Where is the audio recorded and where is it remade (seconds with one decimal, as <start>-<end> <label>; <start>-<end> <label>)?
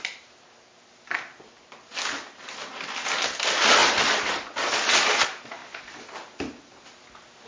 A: 0.0-7.5 recorded